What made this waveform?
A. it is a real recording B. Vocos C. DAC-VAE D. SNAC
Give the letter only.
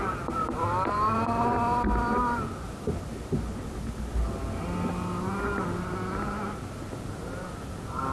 A